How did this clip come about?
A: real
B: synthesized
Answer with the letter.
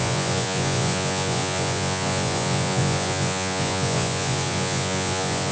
B